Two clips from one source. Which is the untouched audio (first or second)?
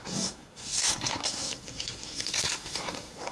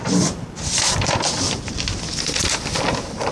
second